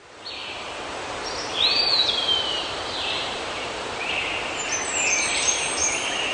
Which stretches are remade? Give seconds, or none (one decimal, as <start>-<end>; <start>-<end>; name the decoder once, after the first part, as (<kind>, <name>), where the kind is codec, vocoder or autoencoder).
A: 0.0-6.3 (vocoder, BigVGAN v2)